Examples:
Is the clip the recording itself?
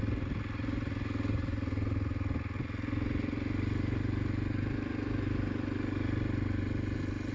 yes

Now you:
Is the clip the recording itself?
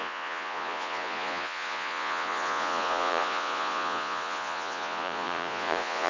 no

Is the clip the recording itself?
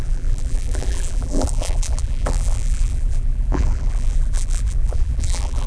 no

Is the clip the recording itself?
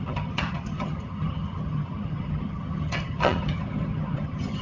no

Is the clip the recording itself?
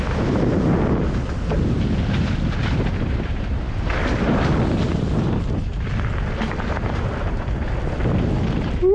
yes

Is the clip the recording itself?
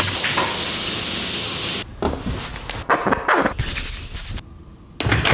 yes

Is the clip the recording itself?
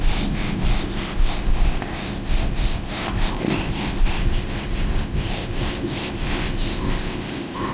no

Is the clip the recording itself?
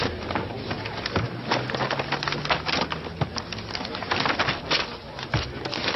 yes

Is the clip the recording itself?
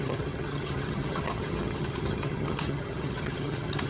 no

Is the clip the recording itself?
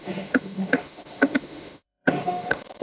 no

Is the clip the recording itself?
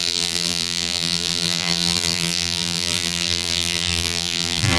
no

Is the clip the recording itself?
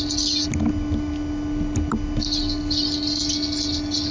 yes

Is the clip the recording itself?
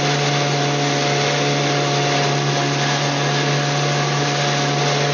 yes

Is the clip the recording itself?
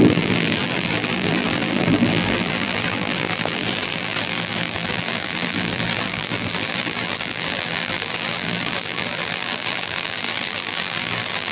no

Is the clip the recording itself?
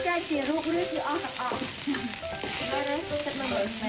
yes